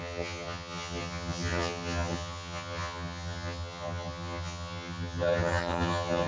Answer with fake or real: fake